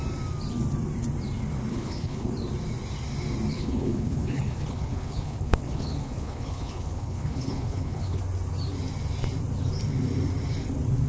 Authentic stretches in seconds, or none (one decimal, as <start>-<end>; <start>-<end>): 0.0-1.7; 2.3-3.5; 8.2-11.1